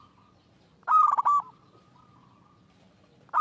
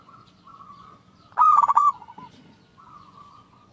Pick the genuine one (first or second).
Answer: first